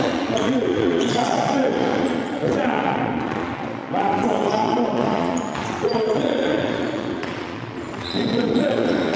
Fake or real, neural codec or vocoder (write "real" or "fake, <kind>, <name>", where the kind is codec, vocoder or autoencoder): fake, vocoder, Vocos